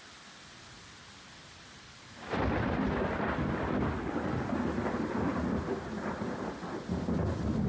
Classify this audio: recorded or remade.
recorded